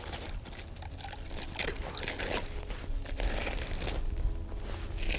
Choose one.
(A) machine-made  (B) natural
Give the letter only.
B